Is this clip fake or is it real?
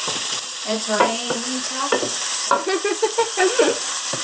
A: fake